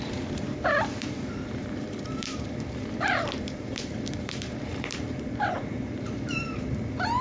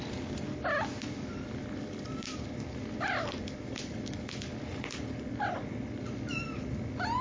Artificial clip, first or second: first